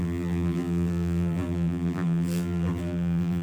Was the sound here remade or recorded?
remade